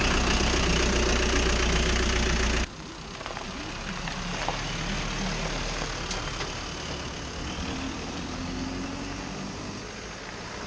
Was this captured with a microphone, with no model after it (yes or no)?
yes